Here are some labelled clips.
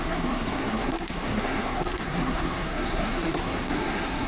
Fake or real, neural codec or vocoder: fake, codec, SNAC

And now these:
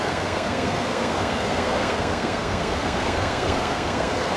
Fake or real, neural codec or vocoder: fake, codec, SNAC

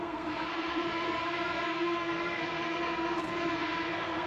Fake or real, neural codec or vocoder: fake, codec, SNAC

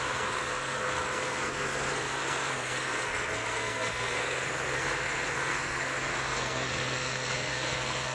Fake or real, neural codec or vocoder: fake, codec, SNAC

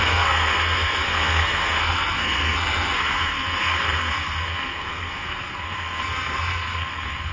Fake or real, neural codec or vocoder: fake, codec, SNAC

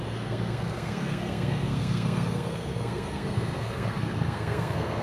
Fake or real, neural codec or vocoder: fake, codec, SNAC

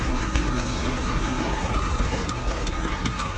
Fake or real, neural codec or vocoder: fake, codec, SNAC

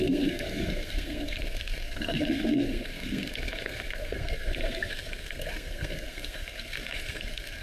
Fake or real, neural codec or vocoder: fake, codec, SNAC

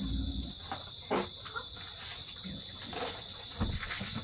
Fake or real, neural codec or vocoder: real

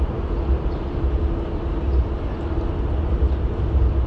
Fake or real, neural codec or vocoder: real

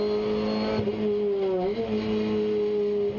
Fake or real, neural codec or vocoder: real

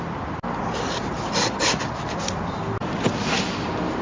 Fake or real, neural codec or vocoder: real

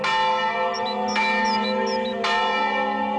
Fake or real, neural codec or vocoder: real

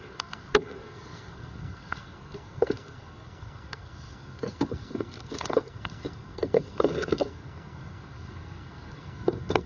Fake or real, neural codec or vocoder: fake, codec, SNAC